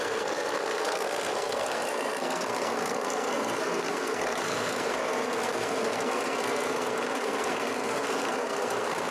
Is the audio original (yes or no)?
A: no